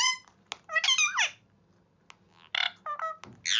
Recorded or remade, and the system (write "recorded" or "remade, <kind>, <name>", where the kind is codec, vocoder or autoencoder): recorded